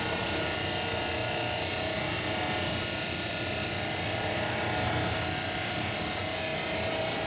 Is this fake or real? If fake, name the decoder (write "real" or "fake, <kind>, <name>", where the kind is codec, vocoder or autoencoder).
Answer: real